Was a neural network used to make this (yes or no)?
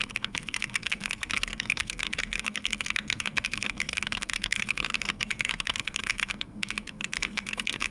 yes